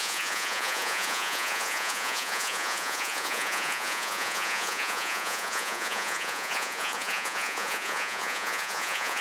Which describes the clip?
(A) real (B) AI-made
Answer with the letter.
B